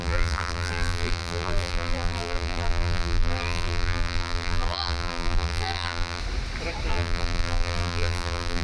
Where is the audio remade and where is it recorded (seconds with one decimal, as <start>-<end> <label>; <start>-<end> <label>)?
0.0-6.2 remade; 6.2-6.9 recorded; 6.9-8.6 remade